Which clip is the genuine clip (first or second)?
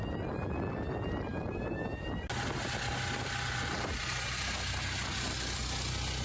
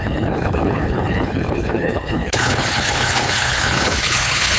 first